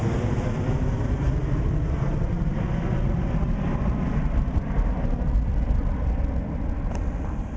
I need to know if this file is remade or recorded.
recorded